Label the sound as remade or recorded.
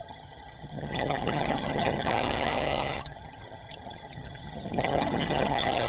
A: remade